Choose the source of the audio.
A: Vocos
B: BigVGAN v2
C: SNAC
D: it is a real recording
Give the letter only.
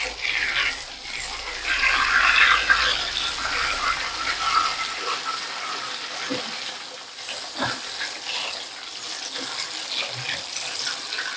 D